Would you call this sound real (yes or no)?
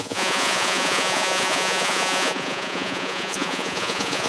no